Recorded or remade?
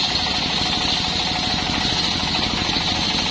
recorded